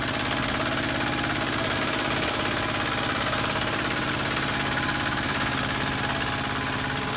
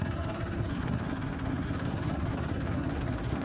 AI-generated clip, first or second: second